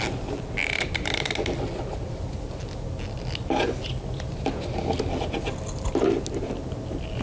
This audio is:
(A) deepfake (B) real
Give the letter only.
B